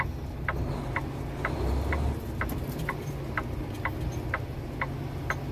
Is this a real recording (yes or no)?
yes